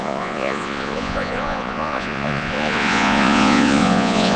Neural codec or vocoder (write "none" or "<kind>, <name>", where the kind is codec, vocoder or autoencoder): vocoder, Vocos